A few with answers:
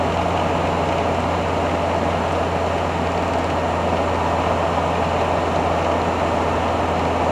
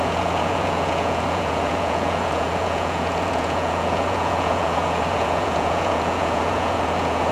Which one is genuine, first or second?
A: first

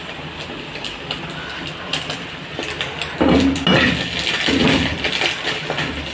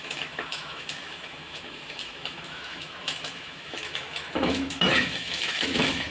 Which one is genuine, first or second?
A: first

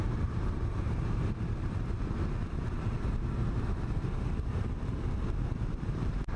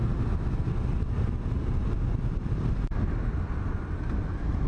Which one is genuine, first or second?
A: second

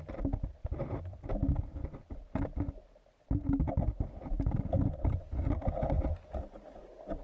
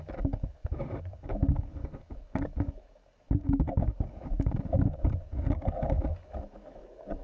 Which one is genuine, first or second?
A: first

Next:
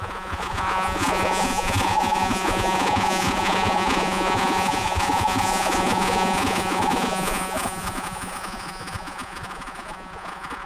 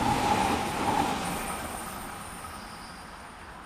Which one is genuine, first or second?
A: second